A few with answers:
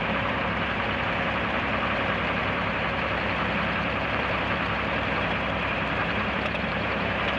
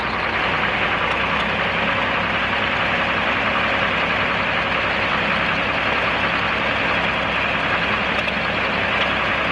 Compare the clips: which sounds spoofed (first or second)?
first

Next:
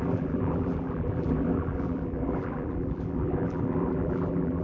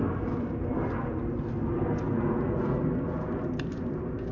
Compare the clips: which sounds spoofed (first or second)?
first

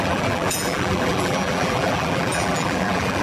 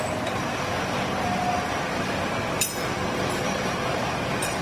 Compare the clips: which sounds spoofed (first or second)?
first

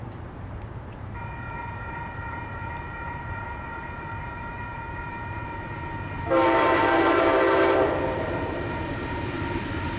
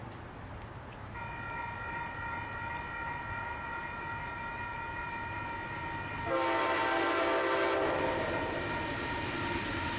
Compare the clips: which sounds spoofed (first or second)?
first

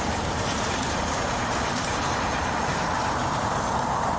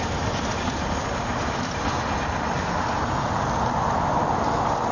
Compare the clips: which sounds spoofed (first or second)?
first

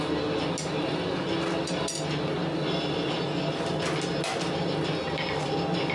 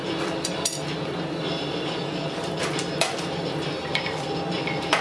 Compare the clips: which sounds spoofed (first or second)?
second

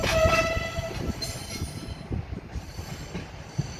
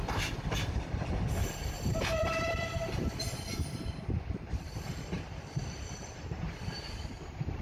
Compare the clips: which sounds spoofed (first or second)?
second